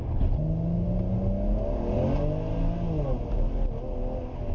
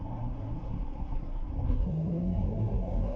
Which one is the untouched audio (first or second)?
first